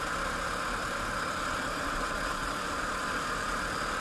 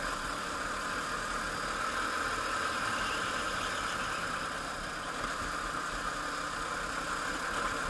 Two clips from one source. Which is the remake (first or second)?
first